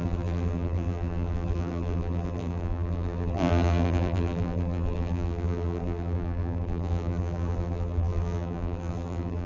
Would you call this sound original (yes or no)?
no